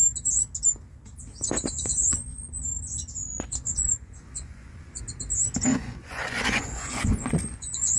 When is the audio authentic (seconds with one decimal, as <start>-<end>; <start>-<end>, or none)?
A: 0.0-1.9; 2.6-3.2; 5.0-5.7